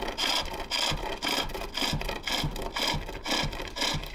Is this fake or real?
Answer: real